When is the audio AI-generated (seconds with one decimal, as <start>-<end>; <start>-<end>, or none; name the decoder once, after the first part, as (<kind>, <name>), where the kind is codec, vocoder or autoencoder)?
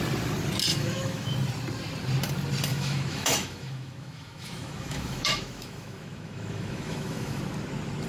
0.7-1.3 (autoencoder, DAC-VAE); 2.7-7.4